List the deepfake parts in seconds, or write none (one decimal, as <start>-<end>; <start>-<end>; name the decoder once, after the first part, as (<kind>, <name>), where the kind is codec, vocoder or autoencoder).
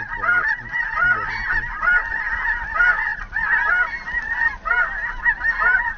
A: none